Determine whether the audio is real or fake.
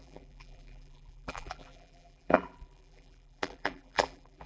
fake